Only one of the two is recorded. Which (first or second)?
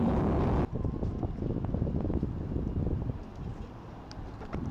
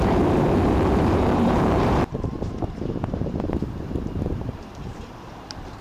first